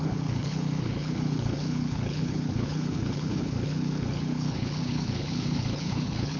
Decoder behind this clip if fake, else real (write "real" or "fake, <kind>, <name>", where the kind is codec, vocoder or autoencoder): fake, codec, HILCodec